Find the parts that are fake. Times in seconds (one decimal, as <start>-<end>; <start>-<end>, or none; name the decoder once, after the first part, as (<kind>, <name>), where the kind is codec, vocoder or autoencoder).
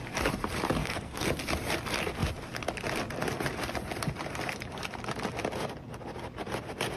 0.8-1.3 (codec, SNAC)